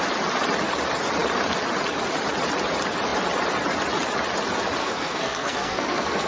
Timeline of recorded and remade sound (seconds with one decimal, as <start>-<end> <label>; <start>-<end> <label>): 0.0-4.8 recorded; 4.8-6.3 remade